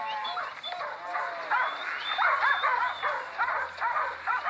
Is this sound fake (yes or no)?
yes